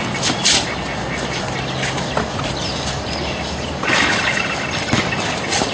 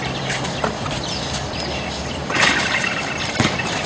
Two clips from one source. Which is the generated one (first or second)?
second